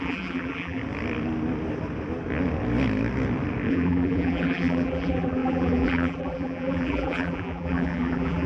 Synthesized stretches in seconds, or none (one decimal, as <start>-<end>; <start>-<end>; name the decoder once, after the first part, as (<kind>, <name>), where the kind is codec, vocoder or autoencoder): 0.0-0.8 (vocoder, BigVGAN v2); 3.7-8.5